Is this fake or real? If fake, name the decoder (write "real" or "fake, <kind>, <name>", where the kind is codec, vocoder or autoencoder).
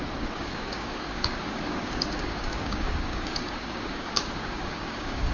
fake, codec, DAC